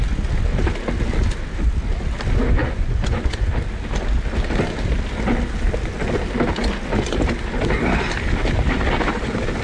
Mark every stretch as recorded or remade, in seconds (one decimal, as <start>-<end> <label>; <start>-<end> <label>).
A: 0.0-2.6 recorded; 2.6-3.5 remade; 3.5-9.6 recorded